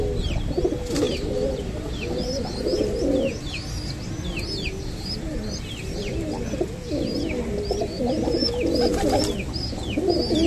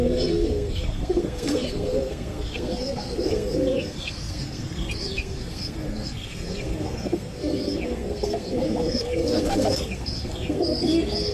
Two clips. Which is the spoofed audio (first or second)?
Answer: second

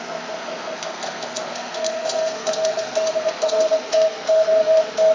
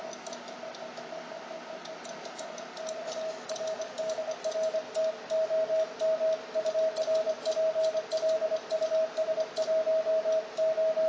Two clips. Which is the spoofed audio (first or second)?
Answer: first